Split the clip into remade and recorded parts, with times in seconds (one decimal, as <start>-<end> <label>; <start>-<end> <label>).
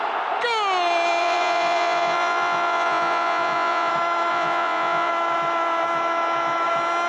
0.0-1.2 recorded; 1.2-3.9 remade; 3.9-4.3 recorded; 4.3-5.1 remade; 5.1-7.1 recorded